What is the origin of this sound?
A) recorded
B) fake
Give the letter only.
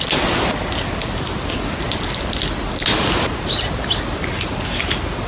A